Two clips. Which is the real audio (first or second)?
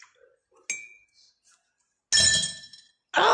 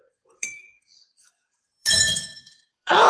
first